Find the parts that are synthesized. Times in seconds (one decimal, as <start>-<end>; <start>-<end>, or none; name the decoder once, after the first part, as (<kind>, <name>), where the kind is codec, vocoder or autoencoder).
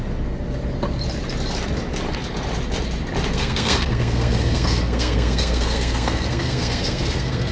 3.3-7.5 (codec, SNAC)